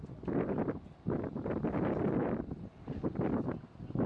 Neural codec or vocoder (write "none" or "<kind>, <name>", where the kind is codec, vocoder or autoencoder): none